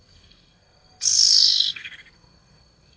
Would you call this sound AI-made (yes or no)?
yes